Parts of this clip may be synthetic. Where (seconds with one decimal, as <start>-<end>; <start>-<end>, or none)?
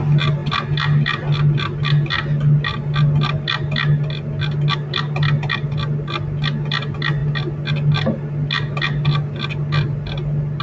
none